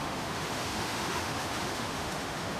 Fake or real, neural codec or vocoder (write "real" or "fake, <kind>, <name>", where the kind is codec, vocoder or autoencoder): fake, autoencoder, DAC-VAE